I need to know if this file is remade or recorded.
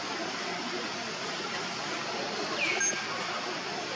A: recorded